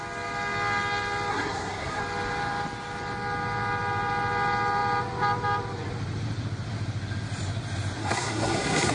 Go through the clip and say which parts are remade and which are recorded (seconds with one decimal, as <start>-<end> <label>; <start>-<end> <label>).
0.0-1.3 recorded; 1.3-2.0 remade; 2.0-8.0 recorded; 8.0-8.9 remade

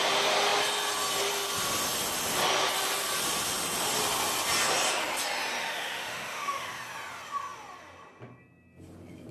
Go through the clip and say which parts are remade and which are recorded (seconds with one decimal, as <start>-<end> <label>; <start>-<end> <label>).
0.0-5.6 recorded; 5.6-6.8 remade; 6.8-9.3 recorded